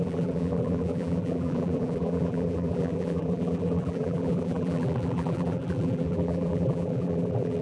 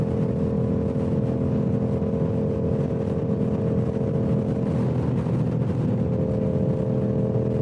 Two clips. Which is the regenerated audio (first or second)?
first